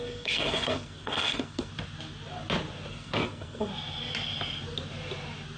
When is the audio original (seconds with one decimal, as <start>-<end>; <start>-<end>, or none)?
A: 1.7-2.9; 3.7-5.6